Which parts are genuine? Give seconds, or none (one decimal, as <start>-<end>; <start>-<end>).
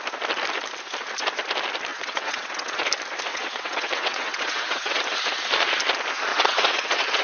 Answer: 0.0-1.9; 2.8-3.3; 5.0-6.3